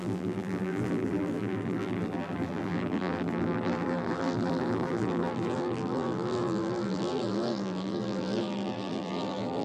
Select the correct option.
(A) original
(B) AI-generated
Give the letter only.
B